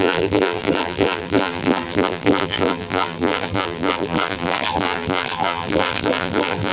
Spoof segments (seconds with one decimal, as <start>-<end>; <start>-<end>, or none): 0.0-6.7